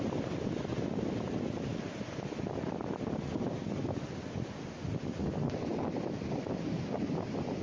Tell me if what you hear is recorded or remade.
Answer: recorded